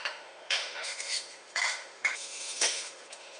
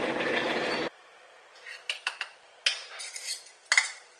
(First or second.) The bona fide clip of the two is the second